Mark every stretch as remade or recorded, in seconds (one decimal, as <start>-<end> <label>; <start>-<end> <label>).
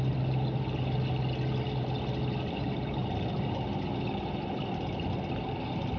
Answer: 0.0-6.0 recorded